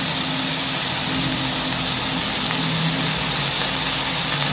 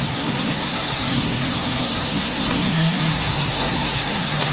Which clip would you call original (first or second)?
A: first